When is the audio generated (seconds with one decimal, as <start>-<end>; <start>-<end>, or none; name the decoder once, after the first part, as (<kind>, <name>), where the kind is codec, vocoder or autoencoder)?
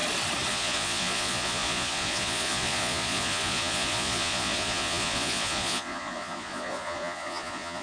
0.5-7.8 (vocoder, Vocos)